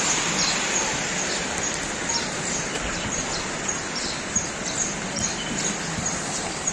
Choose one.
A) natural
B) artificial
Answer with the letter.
B